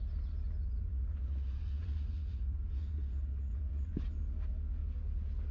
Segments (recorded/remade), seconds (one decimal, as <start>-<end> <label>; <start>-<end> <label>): 0.0-0.6 recorded; 0.6-3.9 remade; 3.9-5.5 recorded